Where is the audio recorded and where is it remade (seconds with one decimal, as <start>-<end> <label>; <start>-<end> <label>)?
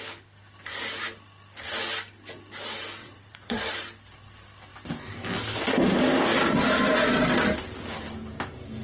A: 0.0-3.0 recorded; 3.0-3.6 remade; 3.6-8.8 recorded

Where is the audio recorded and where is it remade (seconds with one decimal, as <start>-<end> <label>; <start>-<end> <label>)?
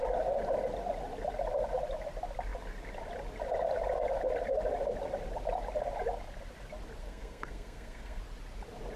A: 0.0-7.0 recorded; 7.0-8.2 remade; 8.2-9.0 recorded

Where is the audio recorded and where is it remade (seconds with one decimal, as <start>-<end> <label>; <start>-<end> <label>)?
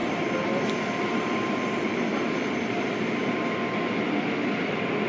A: 0.0-5.1 recorded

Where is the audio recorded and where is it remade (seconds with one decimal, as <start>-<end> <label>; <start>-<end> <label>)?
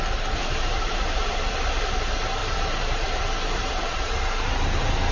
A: 0.0-0.4 recorded; 0.4-1.7 remade; 1.7-2.4 recorded; 2.4-4.6 remade; 4.6-5.1 recorded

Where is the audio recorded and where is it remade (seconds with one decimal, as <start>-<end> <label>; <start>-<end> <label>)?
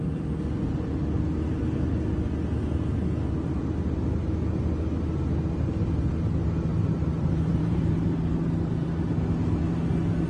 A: 0.0-6.7 recorded; 6.7-8.0 remade; 8.0-10.3 recorded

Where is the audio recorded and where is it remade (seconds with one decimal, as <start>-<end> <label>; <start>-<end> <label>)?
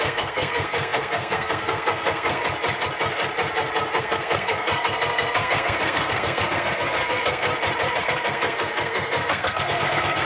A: 0.0-2.4 remade; 2.4-4.0 recorded; 4.0-7.5 remade; 7.5-8.0 recorded; 8.0-10.3 remade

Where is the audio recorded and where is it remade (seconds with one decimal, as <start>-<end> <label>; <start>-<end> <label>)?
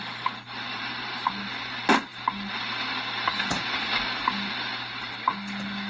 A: 0.0-0.7 recorded; 0.7-1.3 remade; 1.3-5.9 recorded